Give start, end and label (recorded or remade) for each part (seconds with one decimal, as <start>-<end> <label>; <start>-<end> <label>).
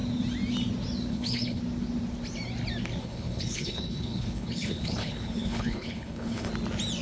0.0-1.1 recorded; 1.1-1.6 remade; 1.6-3.0 recorded; 3.0-6.5 remade; 6.5-7.0 recorded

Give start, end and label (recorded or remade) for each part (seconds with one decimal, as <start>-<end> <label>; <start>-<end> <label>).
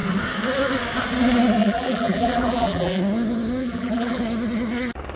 0.0-1.6 recorded; 1.6-3.0 remade; 3.0-3.6 recorded; 3.6-4.2 remade; 4.2-5.2 recorded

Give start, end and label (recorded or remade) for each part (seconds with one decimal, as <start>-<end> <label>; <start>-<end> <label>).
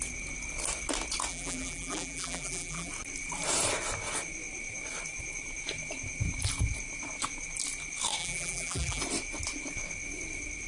0.0-1.3 recorded; 1.3-2.9 remade; 2.9-8.2 recorded; 8.2-9.0 remade; 9.0-10.7 recorded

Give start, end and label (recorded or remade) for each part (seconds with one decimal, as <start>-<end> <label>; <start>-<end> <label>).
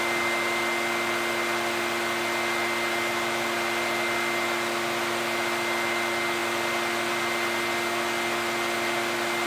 0.0-9.5 recorded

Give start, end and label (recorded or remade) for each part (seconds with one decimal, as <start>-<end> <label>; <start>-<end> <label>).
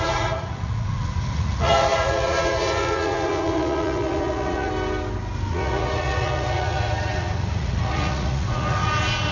0.0-4.7 remade; 4.7-5.5 recorded; 5.5-9.3 remade